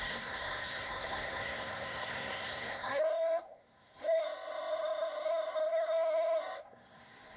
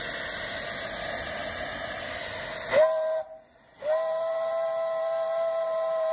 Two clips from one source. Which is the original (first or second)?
second